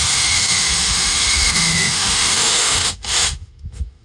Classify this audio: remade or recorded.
remade